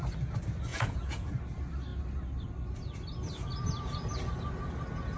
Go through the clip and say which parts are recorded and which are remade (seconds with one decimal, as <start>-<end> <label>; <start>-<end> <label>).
0.0-0.7 recorded; 0.7-1.3 remade; 1.3-5.2 recorded